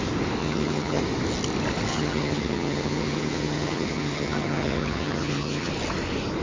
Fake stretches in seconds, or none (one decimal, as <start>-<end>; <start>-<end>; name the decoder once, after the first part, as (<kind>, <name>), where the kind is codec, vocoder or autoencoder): 0.4-1.0 (vocoder, HiFi-GAN); 1.9-5.7